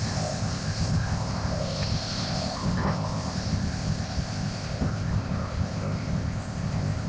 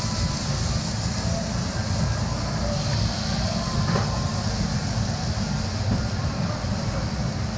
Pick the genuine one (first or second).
second